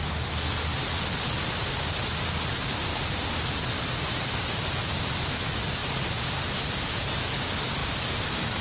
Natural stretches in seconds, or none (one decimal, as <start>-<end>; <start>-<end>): 0.0-0.7; 1.6-2.9; 4.4-5.8; 7.2-7.8